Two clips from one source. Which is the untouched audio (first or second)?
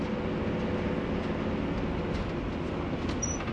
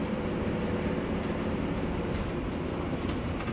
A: first